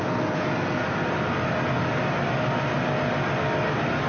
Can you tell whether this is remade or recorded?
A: recorded